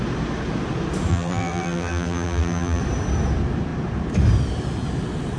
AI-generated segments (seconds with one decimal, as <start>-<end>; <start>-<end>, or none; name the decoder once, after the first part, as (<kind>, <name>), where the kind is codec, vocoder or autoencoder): 1.1-2.8 (vocoder, BigVGAN v2)